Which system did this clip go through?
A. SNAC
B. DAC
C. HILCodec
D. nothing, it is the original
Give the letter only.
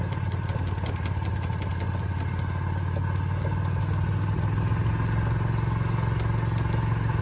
D